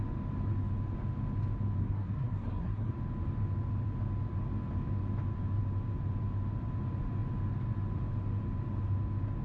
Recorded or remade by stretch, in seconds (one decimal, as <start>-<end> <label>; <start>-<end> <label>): 0.0-1.8 recorded; 1.8-2.9 remade; 2.9-9.4 recorded